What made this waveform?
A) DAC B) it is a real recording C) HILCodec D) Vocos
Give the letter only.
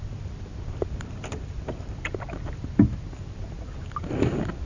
B